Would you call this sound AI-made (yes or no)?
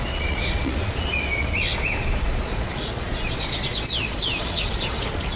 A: yes